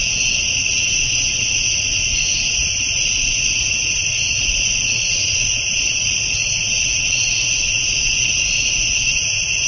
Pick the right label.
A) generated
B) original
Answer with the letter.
A